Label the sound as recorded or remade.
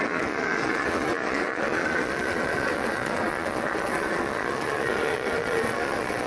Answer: remade